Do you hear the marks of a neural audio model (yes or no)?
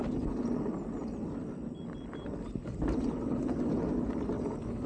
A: no